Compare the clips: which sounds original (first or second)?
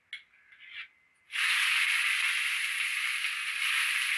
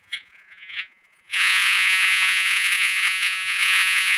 first